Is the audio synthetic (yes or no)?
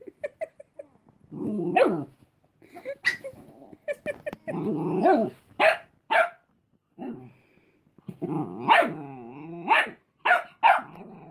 no